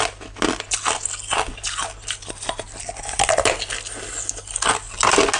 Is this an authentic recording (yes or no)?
yes